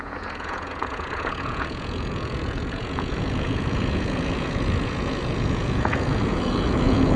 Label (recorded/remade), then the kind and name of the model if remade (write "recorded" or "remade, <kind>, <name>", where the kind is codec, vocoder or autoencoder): remade, vocoder, Vocos